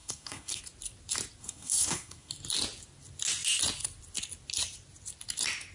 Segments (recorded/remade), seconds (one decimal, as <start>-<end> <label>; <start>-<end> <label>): 0.0-0.6 remade; 0.6-1.4 recorded; 1.4-2.3 remade; 2.3-5.7 recorded